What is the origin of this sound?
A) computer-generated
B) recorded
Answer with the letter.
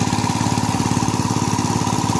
B